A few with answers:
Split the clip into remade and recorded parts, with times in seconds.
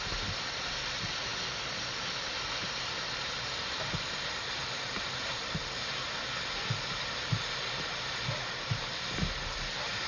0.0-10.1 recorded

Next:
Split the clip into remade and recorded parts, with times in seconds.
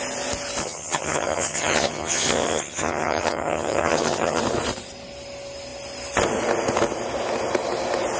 0.0-0.6 recorded; 0.6-4.4 remade; 4.4-8.2 recorded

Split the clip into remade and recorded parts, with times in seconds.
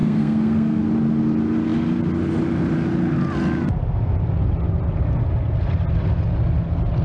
0.0-0.8 remade; 0.8-7.0 recorded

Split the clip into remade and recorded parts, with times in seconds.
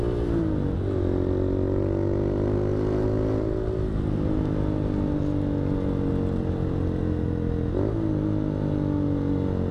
0.0-9.7 recorded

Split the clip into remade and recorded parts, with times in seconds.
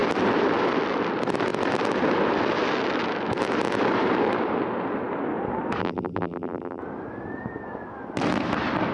0.0-5.8 recorded; 5.8-6.8 remade; 6.8-8.9 recorded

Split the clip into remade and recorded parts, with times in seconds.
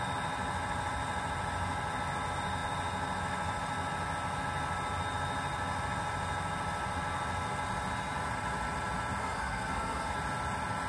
0.0-9.2 recorded; 9.2-10.1 remade; 10.1-10.9 recorded